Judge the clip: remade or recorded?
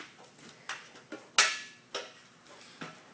recorded